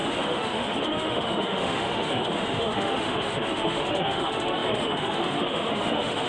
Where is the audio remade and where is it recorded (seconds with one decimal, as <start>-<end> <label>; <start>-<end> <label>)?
0.0-6.3 remade